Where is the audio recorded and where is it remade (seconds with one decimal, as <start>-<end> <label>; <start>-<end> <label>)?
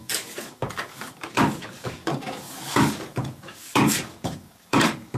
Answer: 0.0-5.2 remade